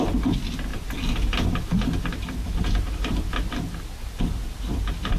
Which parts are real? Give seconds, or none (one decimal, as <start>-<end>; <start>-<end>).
0.7-3.8